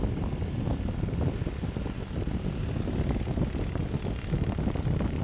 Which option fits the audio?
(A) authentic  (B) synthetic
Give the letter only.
A